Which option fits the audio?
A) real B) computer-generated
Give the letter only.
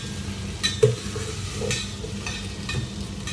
A